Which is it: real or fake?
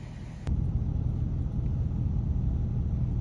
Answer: real